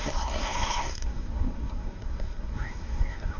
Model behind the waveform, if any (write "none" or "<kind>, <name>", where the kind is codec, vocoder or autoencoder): codec, SNAC